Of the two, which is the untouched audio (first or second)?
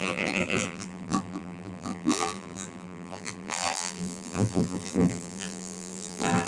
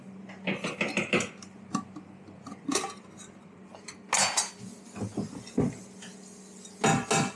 second